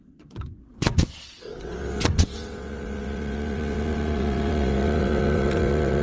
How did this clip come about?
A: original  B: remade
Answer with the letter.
B